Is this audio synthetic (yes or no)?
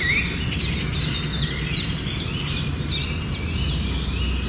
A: no